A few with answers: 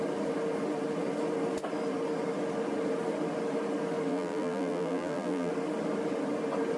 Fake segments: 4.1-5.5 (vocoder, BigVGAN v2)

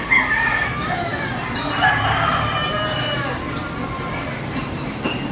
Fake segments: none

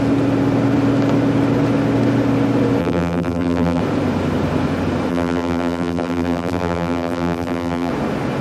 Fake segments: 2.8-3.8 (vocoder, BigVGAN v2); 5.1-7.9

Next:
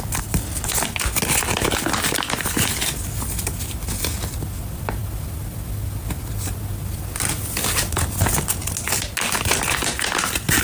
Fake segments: none

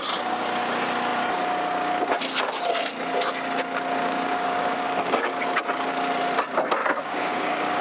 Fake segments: 4.0-5.6 (codec, DAC); 6.8-7.8

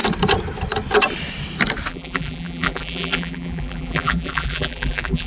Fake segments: 1.9-5.3 (vocoder, BigVGAN v2)

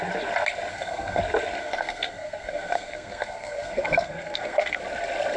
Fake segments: 0.7-1.2 (codec, SNAC); 1.6-4.8